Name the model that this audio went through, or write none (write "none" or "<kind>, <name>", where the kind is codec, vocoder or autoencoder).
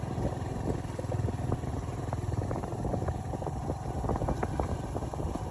none